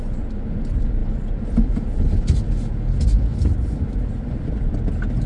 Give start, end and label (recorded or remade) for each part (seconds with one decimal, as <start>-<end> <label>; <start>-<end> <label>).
0.0-5.3 recorded